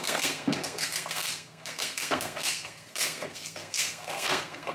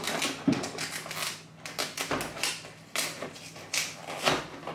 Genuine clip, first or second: second